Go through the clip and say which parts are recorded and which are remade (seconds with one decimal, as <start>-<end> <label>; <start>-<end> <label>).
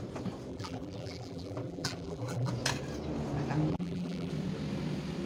0.0-0.5 recorded; 0.5-2.5 remade; 2.5-3.7 recorded; 3.7-4.3 remade; 4.3-5.3 recorded